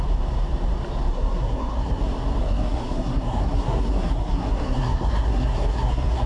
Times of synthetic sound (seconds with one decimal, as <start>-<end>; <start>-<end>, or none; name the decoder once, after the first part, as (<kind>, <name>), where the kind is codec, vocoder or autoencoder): 1.1-2.0 (codec, SNAC); 2.4-6.3